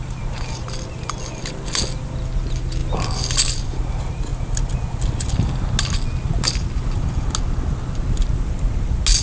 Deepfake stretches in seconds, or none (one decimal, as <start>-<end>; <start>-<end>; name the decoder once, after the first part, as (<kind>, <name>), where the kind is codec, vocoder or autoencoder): none